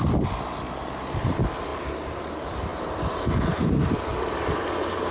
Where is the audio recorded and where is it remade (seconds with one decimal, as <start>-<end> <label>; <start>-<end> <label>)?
0.0-1.7 remade; 1.7-2.3 recorded; 2.3-2.7 remade; 2.7-3.2 recorded; 3.2-5.1 remade